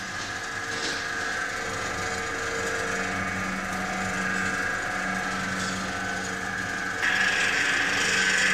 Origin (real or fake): real